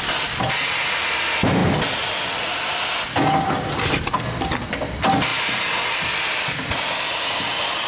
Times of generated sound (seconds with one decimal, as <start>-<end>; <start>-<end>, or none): none